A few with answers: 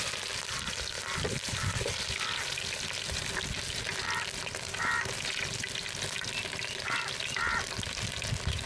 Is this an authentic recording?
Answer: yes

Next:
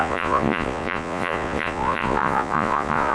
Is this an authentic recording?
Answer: no